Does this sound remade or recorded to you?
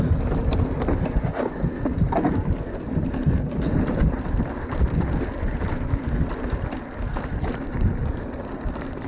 recorded